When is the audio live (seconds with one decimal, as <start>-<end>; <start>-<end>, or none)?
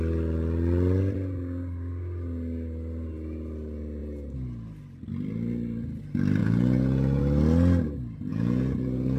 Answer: 0.0-6.4; 7.2-8.3